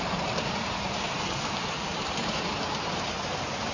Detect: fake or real fake